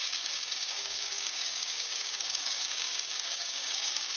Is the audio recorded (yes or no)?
no